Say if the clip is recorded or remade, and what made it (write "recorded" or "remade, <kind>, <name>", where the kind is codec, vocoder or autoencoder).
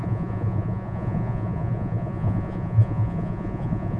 remade, vocoder, Vocos